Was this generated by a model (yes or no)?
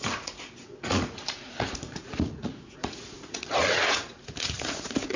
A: yes